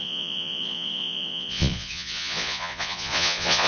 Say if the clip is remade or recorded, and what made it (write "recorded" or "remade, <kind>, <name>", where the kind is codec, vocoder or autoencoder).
remade, vocoder, Vocos